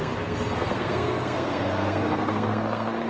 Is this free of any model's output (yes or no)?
no